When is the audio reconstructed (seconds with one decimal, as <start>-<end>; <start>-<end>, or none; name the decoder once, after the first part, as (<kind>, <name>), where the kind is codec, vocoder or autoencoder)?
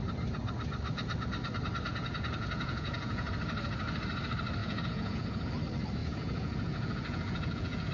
1.9-3.3 (vocoder, Vocos); 4.6-5.5; 6.0-7.9